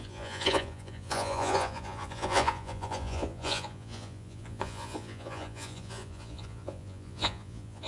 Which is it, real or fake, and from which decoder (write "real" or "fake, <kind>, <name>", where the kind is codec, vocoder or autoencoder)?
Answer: fake, vocoder, Vocos